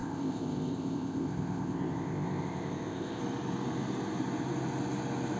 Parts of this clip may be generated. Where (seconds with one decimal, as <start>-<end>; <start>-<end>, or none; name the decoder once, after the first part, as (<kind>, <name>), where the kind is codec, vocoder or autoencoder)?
0.0-3.2 (codec, ZipCodec)